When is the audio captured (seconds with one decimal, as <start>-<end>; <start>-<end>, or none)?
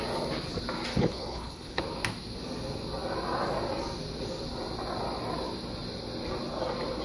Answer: 0.0-0.9; 1.8-7.0